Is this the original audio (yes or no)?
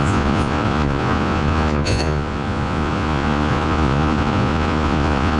no